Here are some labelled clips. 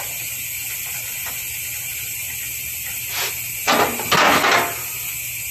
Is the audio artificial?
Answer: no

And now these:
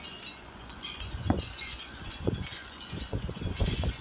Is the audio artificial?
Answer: yes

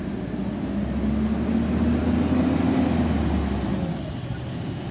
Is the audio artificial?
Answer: no